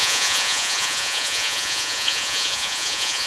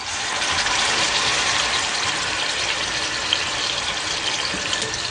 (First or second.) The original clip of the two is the second